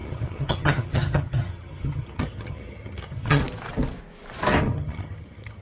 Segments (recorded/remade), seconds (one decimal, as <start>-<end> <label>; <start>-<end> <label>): 0.0-3.4 remade; 3.4-4.6 recorded; 4.6-5.6 remade

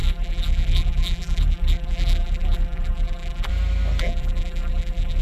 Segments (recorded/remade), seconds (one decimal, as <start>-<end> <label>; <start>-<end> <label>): 0.0-3.5 remade; 3.5-4.0 recorded; 4.0-5.2 remade

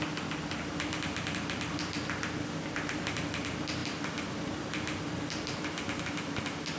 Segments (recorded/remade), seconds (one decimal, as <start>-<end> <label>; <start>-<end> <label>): 0.0-6.8 recorded

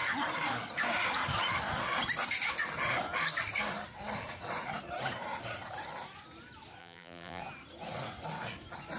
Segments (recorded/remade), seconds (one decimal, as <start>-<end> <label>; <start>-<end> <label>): 0.0-6.8 recorded; 6.8-7.4 remade; 7.4-9.0 recorded

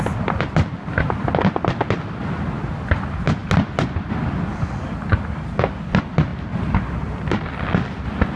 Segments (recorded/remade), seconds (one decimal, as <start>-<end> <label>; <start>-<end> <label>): 0.0-8.4 recorded